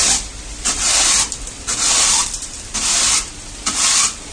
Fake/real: fake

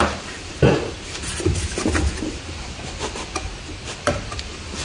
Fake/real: real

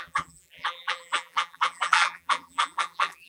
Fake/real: fake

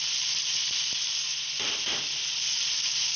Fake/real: fake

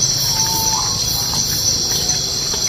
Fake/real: fake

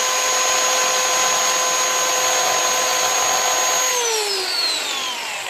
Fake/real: real